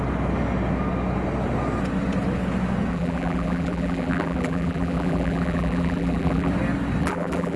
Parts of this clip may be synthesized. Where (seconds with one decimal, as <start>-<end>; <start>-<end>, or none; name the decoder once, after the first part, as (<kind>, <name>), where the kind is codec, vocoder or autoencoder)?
2.9-6.5 (vocoder, BigVGAN v2); 7.0-7.6